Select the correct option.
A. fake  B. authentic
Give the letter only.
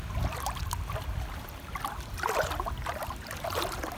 B